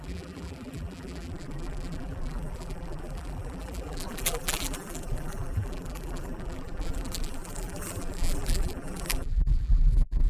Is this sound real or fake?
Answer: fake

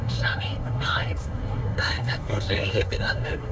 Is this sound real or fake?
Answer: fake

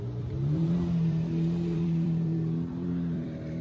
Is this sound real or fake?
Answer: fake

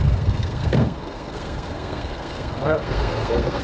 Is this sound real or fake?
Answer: fake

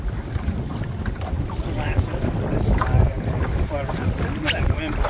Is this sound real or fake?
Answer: real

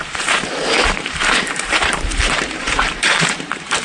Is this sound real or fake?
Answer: fake